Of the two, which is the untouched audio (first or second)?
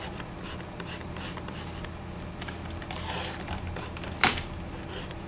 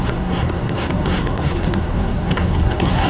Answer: first